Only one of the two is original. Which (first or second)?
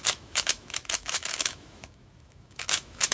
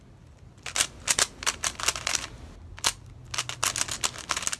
second